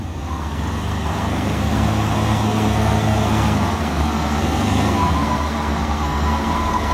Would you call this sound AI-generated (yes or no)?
yes